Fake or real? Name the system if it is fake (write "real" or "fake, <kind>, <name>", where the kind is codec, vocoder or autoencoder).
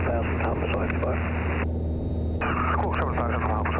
real